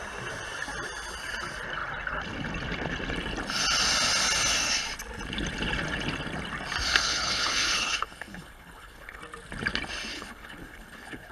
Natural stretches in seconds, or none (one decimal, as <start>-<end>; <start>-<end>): 0.0-7.0; 9.2-10.1